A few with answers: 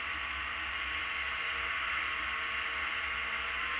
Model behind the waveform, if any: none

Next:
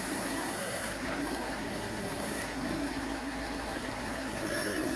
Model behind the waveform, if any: codec, SNAC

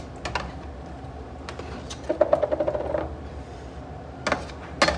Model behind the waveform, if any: none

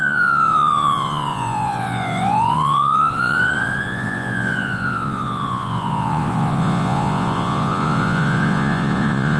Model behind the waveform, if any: vocoder, Vocos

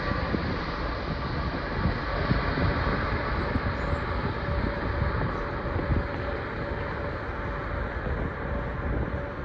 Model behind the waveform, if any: none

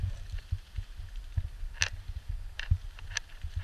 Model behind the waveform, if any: vocoder, BigVGAN v2